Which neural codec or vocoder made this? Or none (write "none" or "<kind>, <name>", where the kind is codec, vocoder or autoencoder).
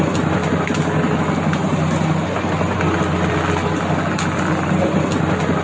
none